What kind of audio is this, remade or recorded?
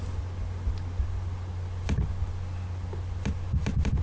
recorded